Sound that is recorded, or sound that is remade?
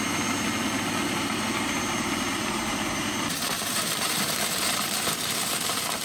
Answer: remade